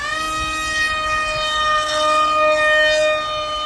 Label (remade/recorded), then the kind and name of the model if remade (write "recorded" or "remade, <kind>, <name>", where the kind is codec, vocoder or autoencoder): recorded